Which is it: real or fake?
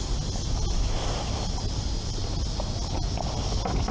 real